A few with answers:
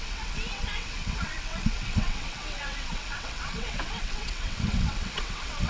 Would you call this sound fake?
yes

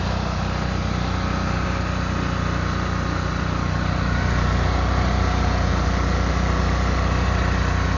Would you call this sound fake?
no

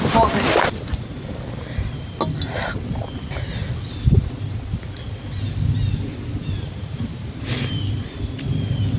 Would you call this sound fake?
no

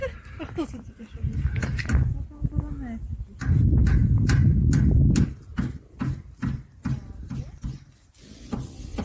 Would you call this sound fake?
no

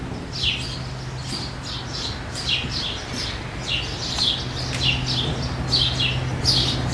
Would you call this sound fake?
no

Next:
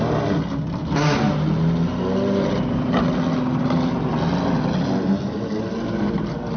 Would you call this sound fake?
no